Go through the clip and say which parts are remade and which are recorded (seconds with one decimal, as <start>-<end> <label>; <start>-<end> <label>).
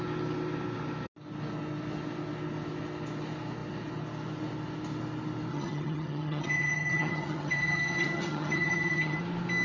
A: 0.0-5.5 recorded; 5.5-9.2 remade; 9.2-9.6 recorded